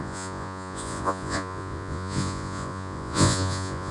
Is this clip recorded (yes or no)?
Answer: no